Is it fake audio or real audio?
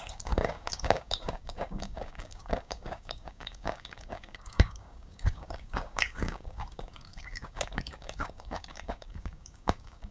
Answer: fake